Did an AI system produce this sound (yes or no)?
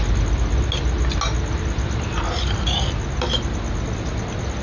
no